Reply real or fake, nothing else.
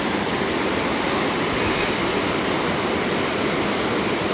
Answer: real